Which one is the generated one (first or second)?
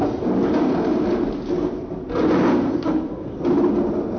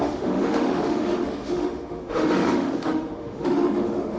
second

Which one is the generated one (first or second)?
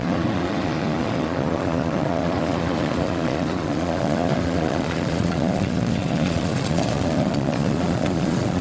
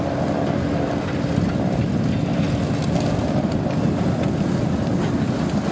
first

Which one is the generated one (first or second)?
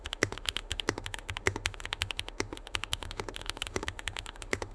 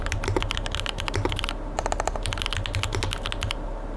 first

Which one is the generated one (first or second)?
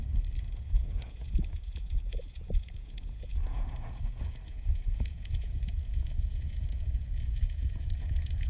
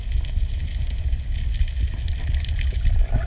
first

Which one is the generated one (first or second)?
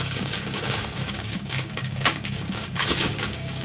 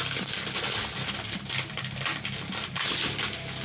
first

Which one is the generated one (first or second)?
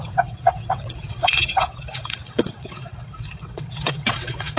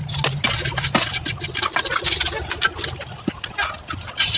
first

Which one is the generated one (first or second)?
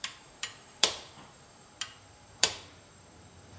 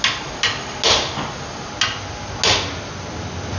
first